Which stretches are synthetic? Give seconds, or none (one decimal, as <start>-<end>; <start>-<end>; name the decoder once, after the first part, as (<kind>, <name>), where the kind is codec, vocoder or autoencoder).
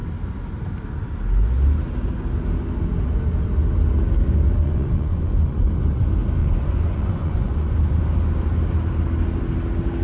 4.6-5.7 (vocoder, Vocos); 6.4-7.7